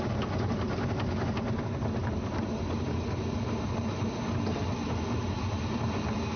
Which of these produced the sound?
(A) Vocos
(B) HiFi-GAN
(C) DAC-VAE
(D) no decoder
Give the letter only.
D